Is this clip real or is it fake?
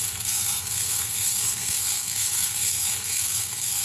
fake